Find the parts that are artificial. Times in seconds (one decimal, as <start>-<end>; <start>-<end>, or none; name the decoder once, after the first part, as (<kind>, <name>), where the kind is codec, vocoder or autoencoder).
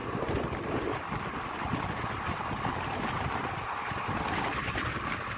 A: none